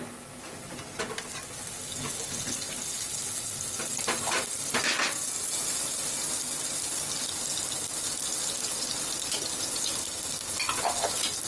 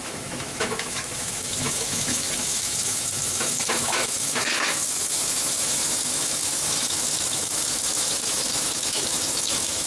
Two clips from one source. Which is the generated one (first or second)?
second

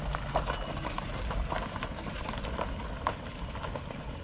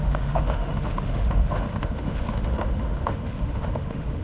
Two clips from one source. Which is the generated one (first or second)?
second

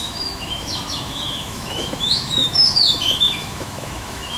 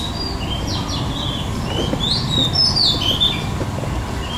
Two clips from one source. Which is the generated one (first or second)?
first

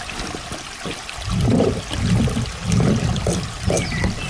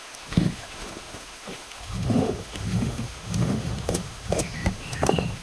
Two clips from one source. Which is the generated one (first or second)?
second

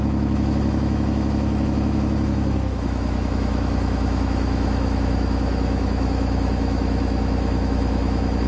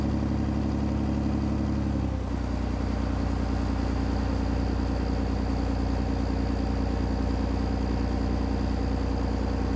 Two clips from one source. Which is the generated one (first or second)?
first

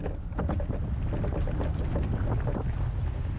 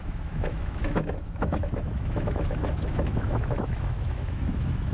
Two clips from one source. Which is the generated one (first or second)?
second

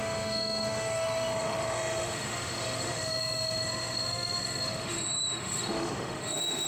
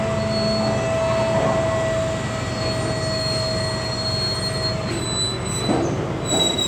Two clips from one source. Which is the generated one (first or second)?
first